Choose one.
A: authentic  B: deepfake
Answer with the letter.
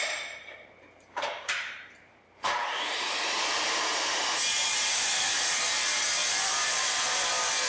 B